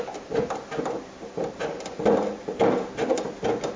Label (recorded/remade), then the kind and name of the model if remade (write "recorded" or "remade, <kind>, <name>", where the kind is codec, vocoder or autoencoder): recorded